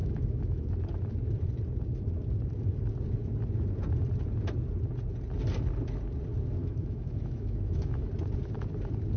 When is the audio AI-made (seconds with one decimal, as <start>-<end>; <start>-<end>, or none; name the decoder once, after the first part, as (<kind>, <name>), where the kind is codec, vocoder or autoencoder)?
0.0-0.7 (autoencoder, DAC-VAE); 6.6-8.1